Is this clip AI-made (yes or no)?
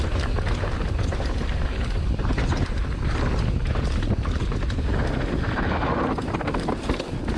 no